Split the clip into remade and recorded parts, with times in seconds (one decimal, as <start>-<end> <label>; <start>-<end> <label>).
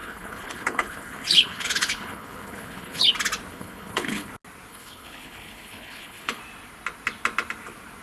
0.0-3.1 remade; 3.1-3.5 recorded; 3.5-4.3 remade; 4.3-4.7 recorded; 4.7-6.4 remade; 6.4-8.0 recorded